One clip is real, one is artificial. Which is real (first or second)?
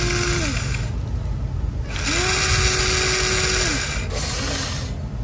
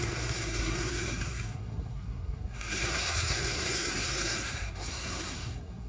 first